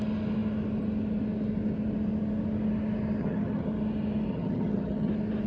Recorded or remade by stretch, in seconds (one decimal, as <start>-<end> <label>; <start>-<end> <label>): 0.0-3.2 recorded; 3.2-3.7 remade; 3.7-4.3 recorded; 4.3-5.1 remade; 5.1-5.5 recorded